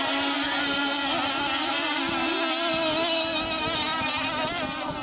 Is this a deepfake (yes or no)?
no